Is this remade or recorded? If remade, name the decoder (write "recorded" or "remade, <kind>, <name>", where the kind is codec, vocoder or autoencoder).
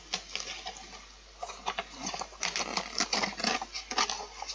recorded